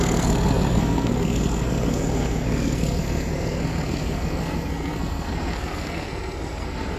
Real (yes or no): no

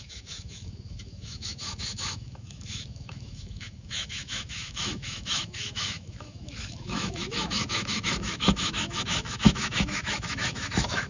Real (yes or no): no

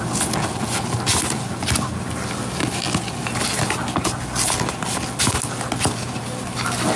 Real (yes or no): yes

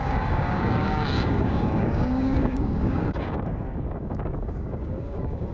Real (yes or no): no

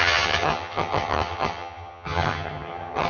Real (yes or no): no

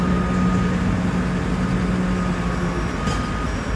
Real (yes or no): yes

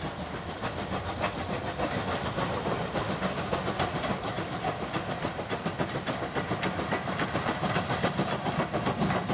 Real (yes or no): yes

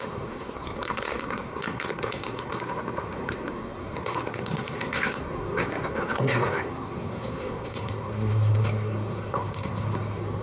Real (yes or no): no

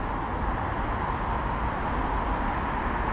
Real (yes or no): yes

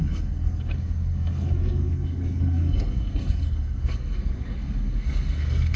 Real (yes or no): no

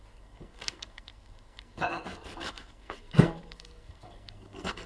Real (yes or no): no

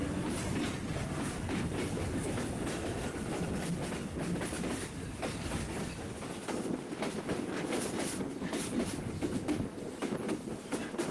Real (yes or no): yes